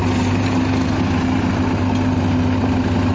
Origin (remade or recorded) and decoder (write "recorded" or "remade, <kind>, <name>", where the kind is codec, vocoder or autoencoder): recorded